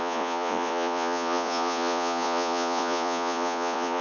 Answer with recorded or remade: remade